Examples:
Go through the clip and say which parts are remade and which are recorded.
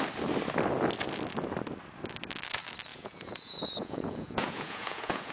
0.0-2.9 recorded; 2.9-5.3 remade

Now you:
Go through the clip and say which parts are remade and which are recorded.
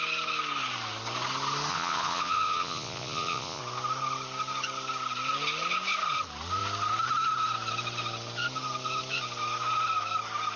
0.0-1.7 recorded; 1.7-3.6 remade; 3.6-10.6 recorded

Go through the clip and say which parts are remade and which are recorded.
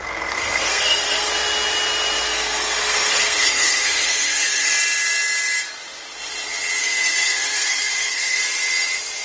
0.0-1.3 remade; 1.3-2.3 recorded; 2.3-4.7 remade; 4.7-6.8 recorded; 6.8-8.4 remade; 8.4-9.2 recorded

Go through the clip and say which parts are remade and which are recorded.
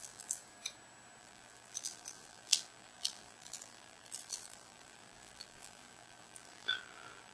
0.0-0.4 remade; 0.4-1.2 recorded; 1.2-7.3 remade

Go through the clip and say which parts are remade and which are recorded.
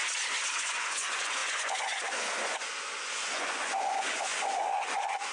0.0-0.6 recorded; 0.6-5.3 remade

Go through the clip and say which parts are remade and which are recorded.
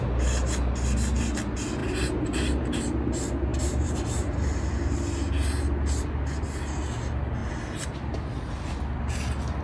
0.0-1.8 recorded; 1.8-2.8 remade; 2.8-3.5 recorded; 3.5-4.6 remade; 4.6-9.6 recorded